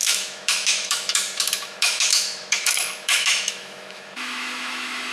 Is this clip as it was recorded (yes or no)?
no